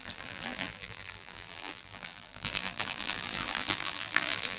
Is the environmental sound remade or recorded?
remade